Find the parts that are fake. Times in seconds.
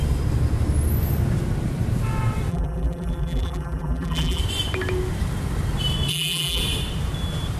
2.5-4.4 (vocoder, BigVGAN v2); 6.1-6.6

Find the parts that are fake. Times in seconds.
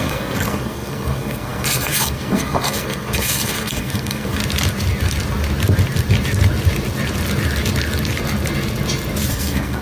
0.0-4.4 (codec, SNAC); 9.3-9.8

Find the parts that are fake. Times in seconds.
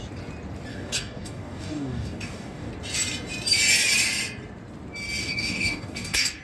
0.7-2.7 (codec, DAC); 5.2-6.4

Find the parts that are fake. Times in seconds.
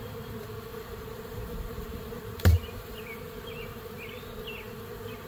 0.7-3.0 (vocoder, BigVGAN v2)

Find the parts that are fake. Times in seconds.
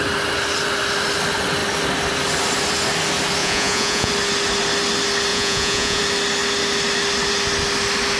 3.4-4.1 (vocoder, Vocos); 5.3-6.0